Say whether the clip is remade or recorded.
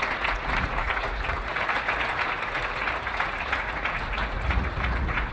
remade